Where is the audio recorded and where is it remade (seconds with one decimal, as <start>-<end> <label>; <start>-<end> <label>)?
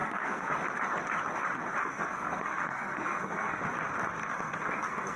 0.0-0.5 remade; 0.5-1.8 recorded; 1.8-3.6 remade; 3.6-4.2 recorded; 4.2-5.2 remade